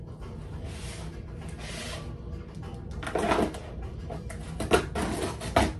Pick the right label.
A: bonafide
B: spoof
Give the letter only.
A